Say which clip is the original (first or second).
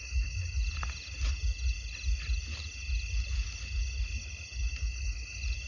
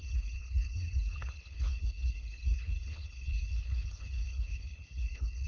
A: first